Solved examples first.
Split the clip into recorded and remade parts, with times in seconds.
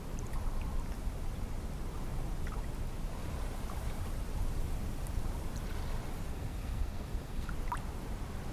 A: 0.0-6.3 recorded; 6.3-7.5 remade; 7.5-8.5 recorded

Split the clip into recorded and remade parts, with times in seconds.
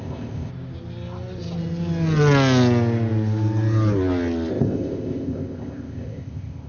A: 0.0-0.5 remade; 0.5-4.5 recorded; 4.5-6.7 remade